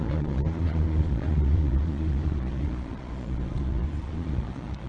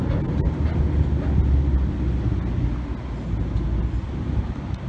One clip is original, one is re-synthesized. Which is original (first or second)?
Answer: second